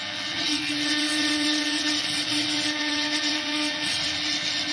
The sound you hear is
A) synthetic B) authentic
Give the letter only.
A